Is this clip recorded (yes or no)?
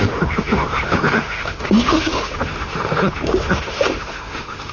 no